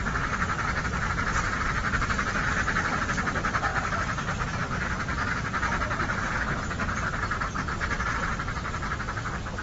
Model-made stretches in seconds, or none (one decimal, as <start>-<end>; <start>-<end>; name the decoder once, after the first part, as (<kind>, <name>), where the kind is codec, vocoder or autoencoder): none